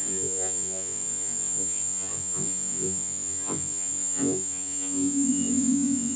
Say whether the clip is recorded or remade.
remade